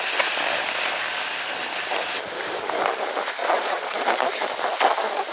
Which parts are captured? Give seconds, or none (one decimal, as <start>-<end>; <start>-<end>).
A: 0.0-3.4; 4.0-5.3